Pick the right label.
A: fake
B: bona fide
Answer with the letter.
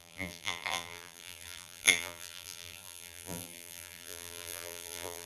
A